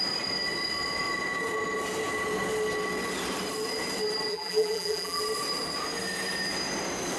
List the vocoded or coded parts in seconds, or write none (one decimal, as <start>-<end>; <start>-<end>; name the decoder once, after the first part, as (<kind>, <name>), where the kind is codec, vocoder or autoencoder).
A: 4.3-5.2 (vocoder, BigVGAN v2)